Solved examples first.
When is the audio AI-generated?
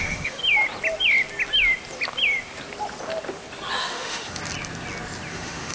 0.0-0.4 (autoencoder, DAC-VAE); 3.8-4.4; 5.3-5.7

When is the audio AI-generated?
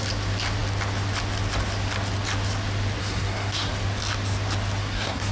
3.0-3.7 (codec, SNAC); 4.8-5.3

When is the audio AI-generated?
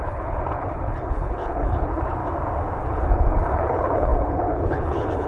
0.0-2.2 (codec, HILCodec); 2.8-5.3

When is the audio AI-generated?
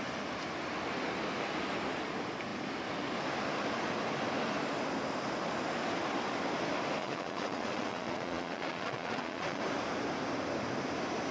7.0-9.6 (vocoder, Vocos)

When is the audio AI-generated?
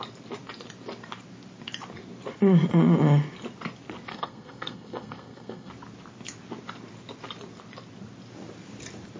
4.1-5.7 (codec, SNAC)